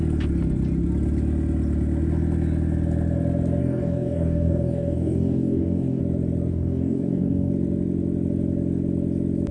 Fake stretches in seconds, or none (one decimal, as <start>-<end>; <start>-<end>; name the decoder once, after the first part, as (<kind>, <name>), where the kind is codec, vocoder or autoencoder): 3.6-6.0 (codec, DAC); 6.5-7.5